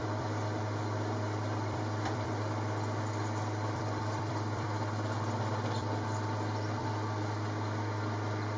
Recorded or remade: remade